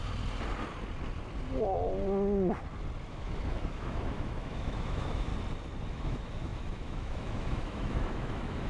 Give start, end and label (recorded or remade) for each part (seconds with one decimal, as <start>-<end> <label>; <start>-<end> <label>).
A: 0.0-3.1 recorded; 3.1-5.3 remade; 5.3-5.9 recorded; 5.9-8.7 remade